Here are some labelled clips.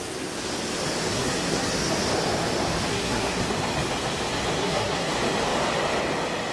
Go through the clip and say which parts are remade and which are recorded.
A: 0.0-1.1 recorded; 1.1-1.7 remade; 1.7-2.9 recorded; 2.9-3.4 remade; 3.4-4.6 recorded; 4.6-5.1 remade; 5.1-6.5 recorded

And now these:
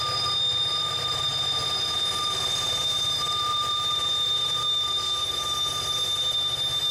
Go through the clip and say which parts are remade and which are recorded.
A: 0.0-1.3 remade; 1.3-2.7 recorded; 2.7-6.9 remade